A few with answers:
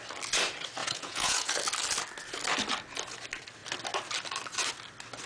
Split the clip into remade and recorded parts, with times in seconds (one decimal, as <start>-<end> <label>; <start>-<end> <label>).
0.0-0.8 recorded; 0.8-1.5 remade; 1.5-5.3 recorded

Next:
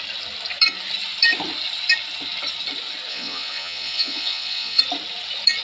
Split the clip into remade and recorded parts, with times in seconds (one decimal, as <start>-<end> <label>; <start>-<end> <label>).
0.0-3.1 recorded; 3.1-4.8 remade; 4.8-5.6 recorded

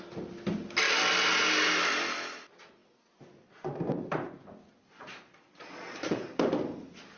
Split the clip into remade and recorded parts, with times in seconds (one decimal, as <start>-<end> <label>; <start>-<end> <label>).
0.0-5.0 recorded; 5.0-6.2 remade; 6.2-7.2 recorded

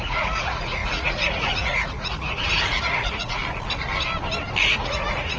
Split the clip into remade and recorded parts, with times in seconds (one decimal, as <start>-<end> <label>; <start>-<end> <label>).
0.0-3.4 remade; 3.4-4.6 recorded; 4.6-5.4 remade

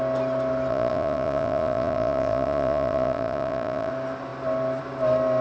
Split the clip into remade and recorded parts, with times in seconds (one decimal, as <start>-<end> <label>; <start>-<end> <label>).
0.0-0.7 recorded; 0.7-3.9 remade; 3.9-5.4 recorded

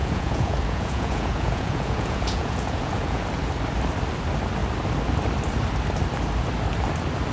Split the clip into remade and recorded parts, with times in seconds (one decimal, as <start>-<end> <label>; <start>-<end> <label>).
0.0-3.2 remade; 3.2-7.3 recorded

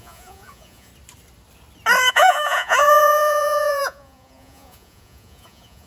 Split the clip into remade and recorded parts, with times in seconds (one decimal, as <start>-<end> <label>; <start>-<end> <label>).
0.0-0.9 remade; 0.9-2.1 recorded; 2.1-5.9 remade

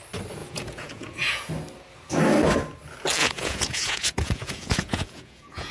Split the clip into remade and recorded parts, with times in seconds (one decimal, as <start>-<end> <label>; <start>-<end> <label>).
0.0-0.4 recorded; 0.4-1.5 remade; 1.5-3.2 recorded; 3.2-5.7 remade